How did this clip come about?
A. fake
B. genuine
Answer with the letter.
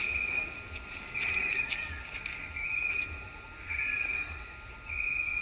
B